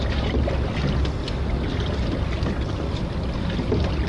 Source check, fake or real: real